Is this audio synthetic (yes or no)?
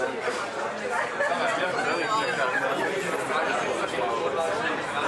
no